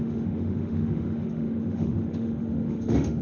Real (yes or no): no